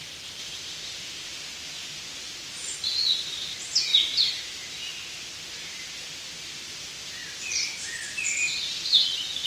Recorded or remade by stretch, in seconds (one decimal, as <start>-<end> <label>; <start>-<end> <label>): 0.0-3.9 recorded; 3.9-4.4 remade; 4.4-9.5 recorded